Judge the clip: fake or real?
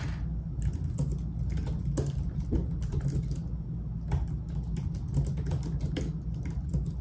real